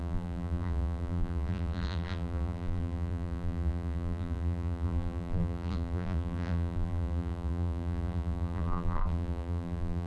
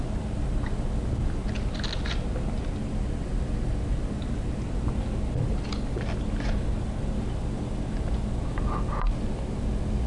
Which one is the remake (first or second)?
first